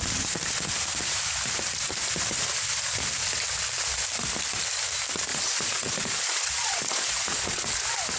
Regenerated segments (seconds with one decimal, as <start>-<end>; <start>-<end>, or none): 5.3-7.7